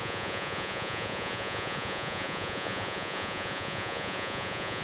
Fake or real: fake